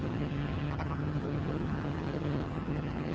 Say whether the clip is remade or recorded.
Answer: remade